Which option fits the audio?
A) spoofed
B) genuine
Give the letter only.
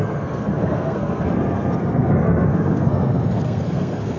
A